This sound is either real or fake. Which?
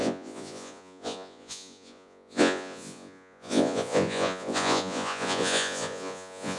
fake